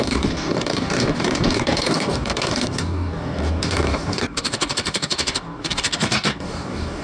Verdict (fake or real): fake